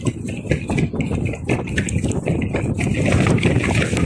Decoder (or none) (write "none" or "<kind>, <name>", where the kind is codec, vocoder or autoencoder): none